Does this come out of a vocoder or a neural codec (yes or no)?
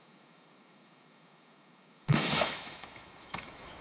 yes